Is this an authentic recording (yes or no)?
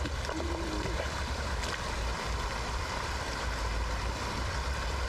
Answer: yes